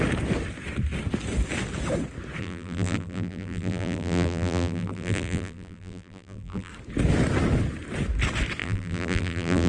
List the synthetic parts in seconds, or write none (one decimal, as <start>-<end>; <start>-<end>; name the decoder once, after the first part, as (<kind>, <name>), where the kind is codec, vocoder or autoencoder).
2.4-6.7 (vocoder, BigVGAN v2); 8.6-9.7